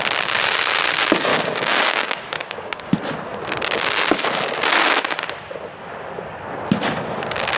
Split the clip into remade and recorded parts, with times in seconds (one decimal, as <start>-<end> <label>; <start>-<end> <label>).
0.0-1.3 recorded; 1.3-2.9 remade; 2.9-7.6 recorded